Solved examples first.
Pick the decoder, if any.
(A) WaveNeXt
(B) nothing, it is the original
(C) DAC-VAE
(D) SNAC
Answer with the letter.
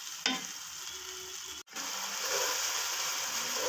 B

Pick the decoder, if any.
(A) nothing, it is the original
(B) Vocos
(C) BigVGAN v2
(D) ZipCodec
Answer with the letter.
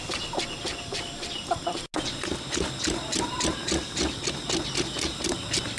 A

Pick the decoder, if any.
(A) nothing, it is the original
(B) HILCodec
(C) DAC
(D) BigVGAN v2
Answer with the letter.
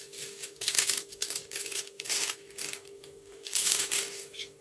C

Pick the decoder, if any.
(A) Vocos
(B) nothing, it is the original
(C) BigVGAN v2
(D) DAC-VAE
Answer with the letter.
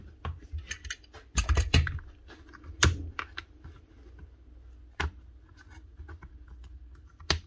B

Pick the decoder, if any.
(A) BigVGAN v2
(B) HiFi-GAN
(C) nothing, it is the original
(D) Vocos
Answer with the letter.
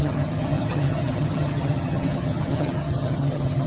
B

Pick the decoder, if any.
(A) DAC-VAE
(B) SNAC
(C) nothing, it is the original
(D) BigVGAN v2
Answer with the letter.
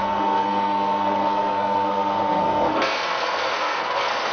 B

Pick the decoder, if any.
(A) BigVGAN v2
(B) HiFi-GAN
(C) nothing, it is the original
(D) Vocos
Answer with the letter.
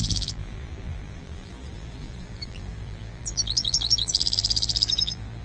A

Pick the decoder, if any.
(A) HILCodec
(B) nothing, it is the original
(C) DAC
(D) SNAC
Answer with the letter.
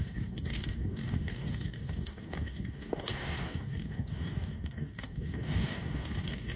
C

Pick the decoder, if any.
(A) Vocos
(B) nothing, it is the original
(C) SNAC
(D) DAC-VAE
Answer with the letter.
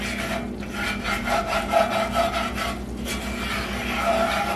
B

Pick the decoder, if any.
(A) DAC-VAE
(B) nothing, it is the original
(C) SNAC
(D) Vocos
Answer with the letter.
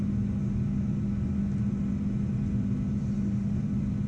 B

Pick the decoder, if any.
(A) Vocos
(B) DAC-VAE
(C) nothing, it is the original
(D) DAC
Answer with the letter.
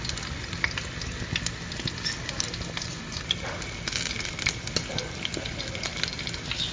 C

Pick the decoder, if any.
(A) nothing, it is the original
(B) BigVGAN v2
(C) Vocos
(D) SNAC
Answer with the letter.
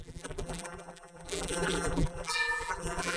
B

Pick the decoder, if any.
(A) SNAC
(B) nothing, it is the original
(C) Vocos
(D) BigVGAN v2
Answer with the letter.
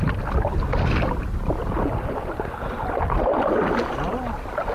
B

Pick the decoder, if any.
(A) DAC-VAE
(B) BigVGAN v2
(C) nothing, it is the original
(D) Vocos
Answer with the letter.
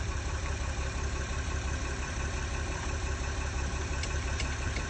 B